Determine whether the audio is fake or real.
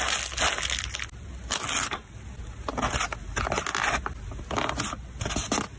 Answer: real